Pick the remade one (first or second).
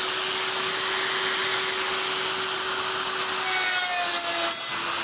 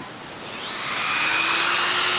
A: second